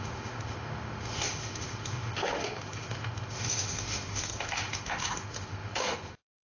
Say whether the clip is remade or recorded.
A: remade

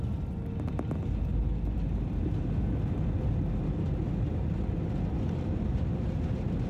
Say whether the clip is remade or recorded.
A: recorded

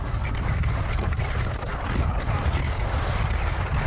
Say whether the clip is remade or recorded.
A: recorded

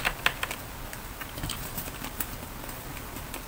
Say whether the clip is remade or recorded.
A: recorded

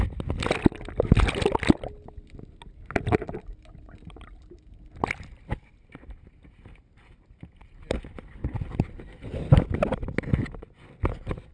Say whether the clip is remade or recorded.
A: recorded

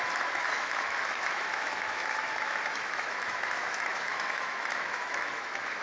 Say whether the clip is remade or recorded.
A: remade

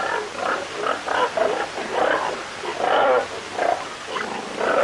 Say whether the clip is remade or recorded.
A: recorded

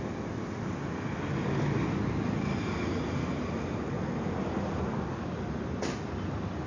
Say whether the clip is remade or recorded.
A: recorded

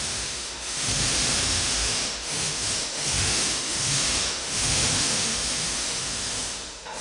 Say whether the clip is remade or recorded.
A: remade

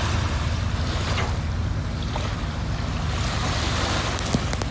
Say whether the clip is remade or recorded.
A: recorded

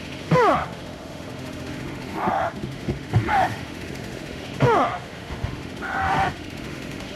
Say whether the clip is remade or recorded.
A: remade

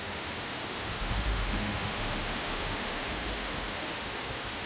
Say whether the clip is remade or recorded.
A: remade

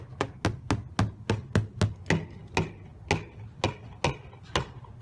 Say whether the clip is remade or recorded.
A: recorded